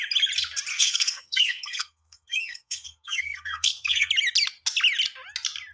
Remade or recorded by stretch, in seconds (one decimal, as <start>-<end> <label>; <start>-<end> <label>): 0.0-0.7 recorded; 0.7-4.1 remade; 4.1-5.7 recorded